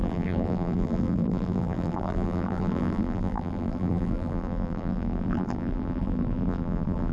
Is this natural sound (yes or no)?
no